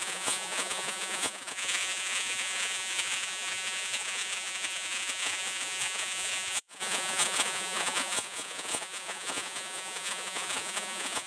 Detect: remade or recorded remade